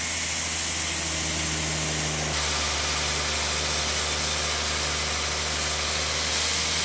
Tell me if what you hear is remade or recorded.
recorded